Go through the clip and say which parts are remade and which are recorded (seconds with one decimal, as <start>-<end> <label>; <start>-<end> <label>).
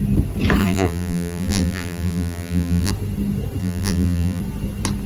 0.0-0.6 recorded; 0.6-2.9 remade; 2.9-3.6 recorded; 3.6-4.4 remade; 4.4-5.1 recorded